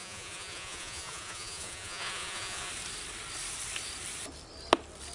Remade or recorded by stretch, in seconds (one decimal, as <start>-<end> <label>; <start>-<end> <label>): 0.0-2.7 remade; 2.7-5.1 recorded